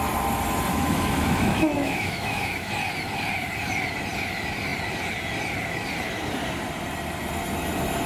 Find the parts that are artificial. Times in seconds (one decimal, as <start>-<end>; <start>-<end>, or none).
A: 0.7-2.7